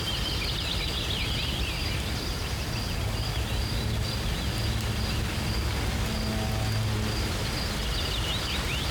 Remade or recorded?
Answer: recorded